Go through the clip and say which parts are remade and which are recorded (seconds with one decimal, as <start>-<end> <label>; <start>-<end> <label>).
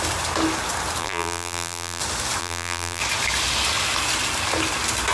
0.0-1.0 recorded; 1.0-2.0 remade; 2.0-2.4 recorded; 2.4-3.0 remade; 3.0-5.1 recorded